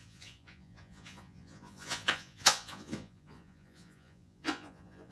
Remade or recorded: remade